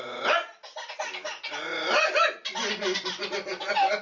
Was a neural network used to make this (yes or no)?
no